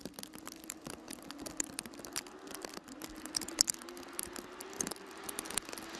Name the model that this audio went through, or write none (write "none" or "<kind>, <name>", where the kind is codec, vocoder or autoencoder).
none